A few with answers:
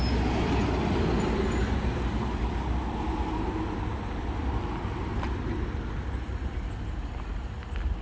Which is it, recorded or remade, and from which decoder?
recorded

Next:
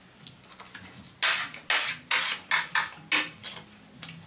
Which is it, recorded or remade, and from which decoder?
recorded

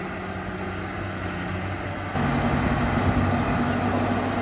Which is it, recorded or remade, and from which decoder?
recorded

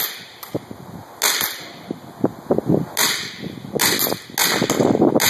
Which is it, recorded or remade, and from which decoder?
recorded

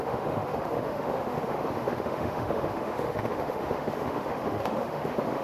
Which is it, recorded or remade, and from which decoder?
remade, autoencoder, DAC-VAE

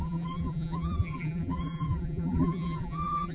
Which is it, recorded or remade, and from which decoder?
remade, vocoder, BigVGAN v2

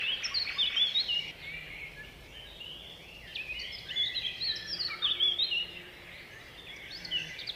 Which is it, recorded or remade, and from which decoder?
recorded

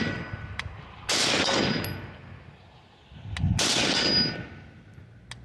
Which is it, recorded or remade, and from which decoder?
recorded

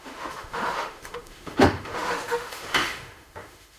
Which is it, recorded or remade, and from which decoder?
remade, autoencoder, DAC-VAE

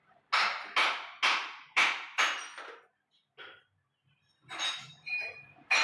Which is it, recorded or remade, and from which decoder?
recorded